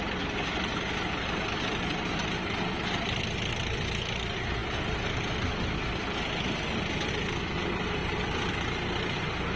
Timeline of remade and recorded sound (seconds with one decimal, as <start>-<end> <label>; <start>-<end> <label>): 0.0-9.6 recorded